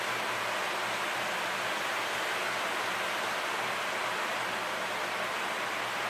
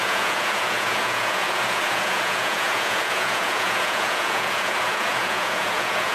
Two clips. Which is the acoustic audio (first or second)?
first